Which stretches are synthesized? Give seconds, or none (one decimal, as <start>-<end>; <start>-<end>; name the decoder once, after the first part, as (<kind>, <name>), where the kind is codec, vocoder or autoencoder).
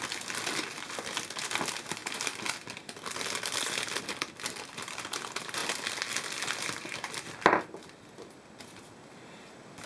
none